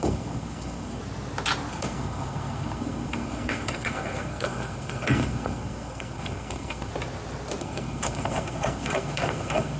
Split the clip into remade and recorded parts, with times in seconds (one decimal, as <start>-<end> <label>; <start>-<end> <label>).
0.0-1.0 remade; 1.0-1.7 recorded; 1.7-6.9 remade; 6.9-7.6 recorded; 7.6-9.8 remade